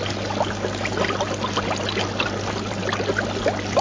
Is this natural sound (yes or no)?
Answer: yes